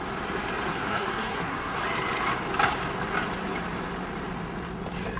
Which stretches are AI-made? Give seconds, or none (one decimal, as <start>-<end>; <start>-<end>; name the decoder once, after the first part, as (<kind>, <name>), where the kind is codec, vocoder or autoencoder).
0.7-1.8 (codec, SNAC)